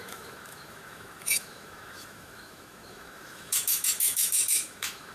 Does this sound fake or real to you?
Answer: fake